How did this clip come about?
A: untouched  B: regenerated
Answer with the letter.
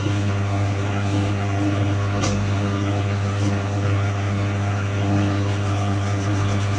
B